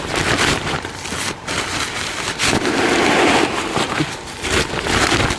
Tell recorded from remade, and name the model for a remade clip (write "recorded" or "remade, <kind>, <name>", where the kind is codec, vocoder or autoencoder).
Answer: recorded